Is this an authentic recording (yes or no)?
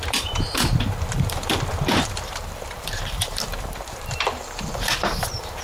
no